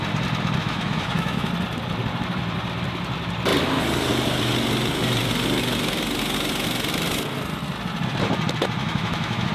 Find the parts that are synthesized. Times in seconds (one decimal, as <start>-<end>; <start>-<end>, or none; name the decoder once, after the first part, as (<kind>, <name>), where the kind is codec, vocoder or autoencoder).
0.6-1.5 (autoencoder, DAC-VAE); 8.8-9.5